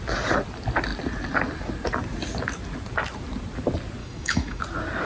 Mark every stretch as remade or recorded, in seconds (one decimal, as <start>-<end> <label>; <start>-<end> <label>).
0.0-4.0 recorded; 4.0-4.6 remade; 4.6-5.1 recorded